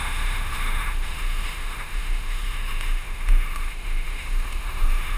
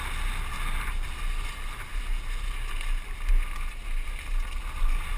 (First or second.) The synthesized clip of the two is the first